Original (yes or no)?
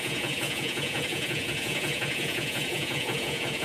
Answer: no